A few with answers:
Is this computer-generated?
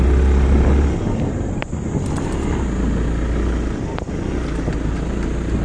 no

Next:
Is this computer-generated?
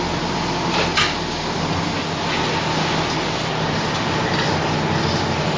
no